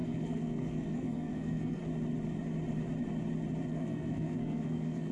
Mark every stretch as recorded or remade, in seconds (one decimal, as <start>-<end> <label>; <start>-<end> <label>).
0.0-1.8 remade; 1.8-3.7 recorded; 3.7-5.1 remade